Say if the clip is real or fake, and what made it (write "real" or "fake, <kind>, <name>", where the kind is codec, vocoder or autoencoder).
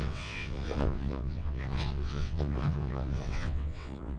fake, vocoder, WaveNeXt